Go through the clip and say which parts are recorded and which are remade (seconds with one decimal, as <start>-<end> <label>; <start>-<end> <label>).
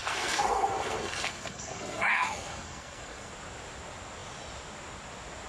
0.0-3.3 remade; 3.3-5.5 recorded